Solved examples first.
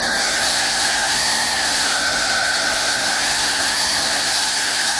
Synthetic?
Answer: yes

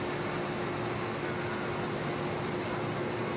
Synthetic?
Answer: no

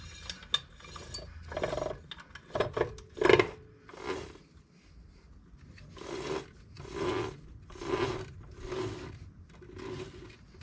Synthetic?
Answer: no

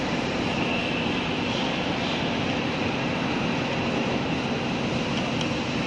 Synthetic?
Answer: no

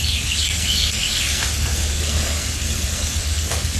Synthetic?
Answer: yes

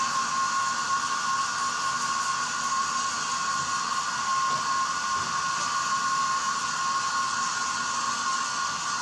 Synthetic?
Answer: no